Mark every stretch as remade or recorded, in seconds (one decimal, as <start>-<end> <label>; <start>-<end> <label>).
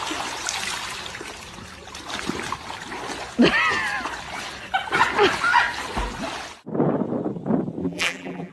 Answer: 0.0-7.8 recorded; 7.8-8.5 remade